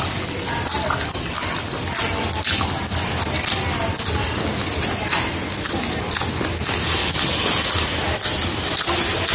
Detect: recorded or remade recorded